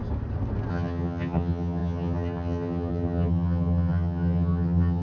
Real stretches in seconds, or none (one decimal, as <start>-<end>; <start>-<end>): 0.0-0.7